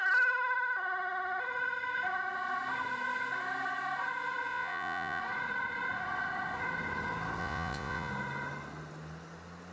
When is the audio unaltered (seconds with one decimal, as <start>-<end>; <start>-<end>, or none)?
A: 0.0-4.5; 5.2-7.4; 8.1-9.7